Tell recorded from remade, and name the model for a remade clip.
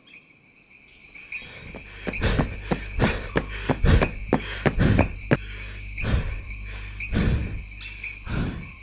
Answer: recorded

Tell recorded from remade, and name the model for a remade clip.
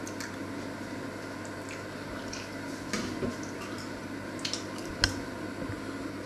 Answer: recorded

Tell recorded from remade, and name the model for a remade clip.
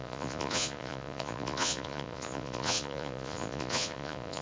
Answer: remade, vocoder, Vocos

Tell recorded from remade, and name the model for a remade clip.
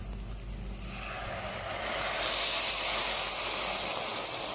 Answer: recorded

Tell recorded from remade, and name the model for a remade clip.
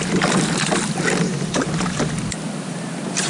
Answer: recorded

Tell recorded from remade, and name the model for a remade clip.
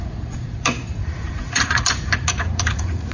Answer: remade, vocoder, Vocos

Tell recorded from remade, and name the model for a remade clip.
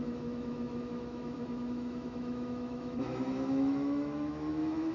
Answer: remade, autoencoder, DAC-VAE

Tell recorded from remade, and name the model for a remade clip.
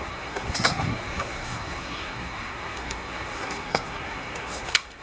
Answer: remade, codec, SNAC